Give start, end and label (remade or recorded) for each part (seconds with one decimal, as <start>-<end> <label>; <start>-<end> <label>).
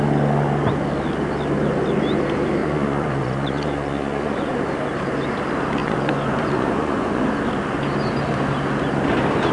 0.0-2.6 recorded; 2.6-4.5 remade; 4.5-5.8 recorded; 5.8-7.2 remade; 7.2-9.5 recorded